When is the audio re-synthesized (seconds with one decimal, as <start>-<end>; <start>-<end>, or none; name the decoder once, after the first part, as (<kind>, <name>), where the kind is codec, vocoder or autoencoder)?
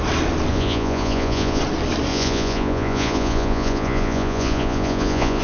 0.5-1.6 (vocoder, Vocos); 2.1-5.4